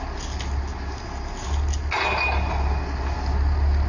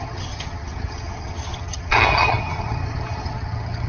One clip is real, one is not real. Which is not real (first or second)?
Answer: second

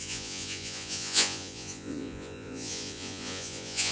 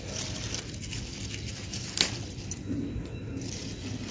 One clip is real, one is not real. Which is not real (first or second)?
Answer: first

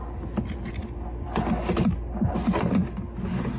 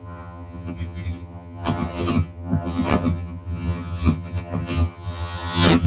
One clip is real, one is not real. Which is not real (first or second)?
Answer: second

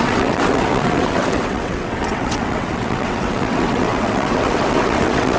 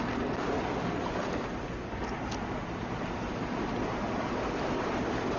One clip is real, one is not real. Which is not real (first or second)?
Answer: first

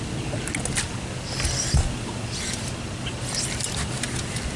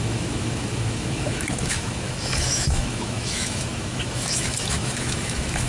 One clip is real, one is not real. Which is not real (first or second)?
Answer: second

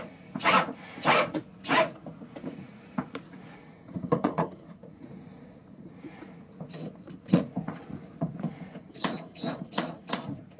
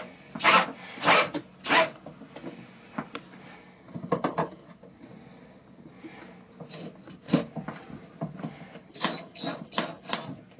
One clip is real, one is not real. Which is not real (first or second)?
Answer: first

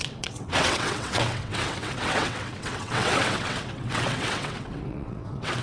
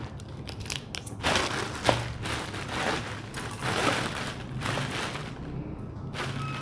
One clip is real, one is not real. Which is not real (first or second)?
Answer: first